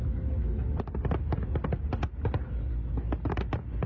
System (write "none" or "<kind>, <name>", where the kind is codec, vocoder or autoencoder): none